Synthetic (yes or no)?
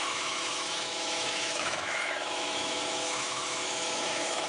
yes